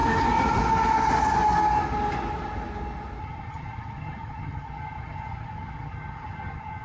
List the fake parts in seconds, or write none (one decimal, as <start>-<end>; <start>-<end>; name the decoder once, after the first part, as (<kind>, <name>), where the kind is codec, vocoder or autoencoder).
3.2-6.8 (vocoder, HiFi-GAN)